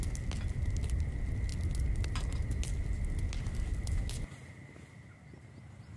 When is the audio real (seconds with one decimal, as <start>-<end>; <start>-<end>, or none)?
0.0-6.0

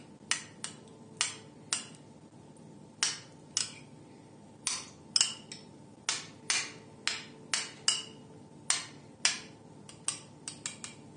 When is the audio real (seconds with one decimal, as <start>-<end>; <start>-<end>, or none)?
0.0-11.2

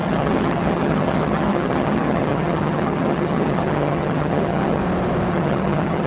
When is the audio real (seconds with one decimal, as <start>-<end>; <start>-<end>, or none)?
4.8-5.3